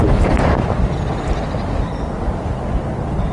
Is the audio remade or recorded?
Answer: recorded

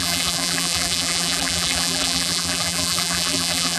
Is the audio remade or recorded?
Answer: remade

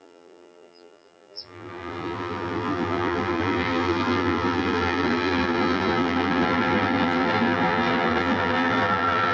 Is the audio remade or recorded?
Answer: remade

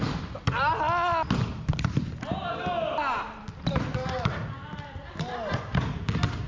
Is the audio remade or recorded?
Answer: recorded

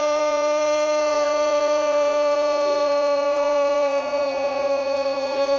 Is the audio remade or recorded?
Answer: remade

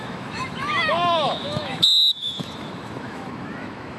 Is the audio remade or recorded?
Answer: remade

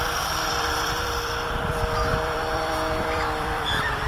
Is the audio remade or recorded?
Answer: remade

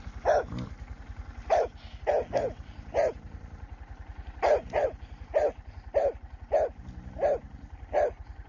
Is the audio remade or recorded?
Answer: recorded